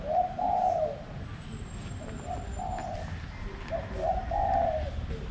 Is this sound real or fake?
real